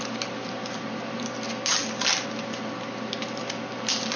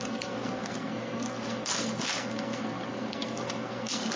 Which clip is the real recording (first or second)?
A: first